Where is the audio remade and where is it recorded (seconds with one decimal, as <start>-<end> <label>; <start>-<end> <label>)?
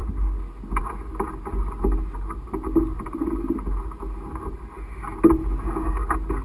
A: 0.0-6.4 recorded